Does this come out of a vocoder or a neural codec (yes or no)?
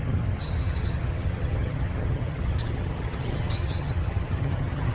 yes